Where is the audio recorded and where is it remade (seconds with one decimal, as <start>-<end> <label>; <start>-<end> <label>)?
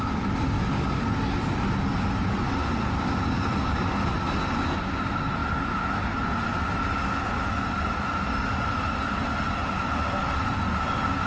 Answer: 0.0-11.3 recorded